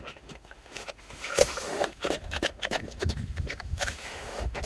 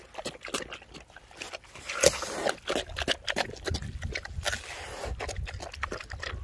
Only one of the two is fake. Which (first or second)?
first